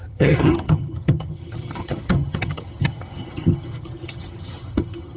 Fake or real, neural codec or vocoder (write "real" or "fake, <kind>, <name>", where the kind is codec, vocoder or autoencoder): fake, vocoder, HiFi-GAN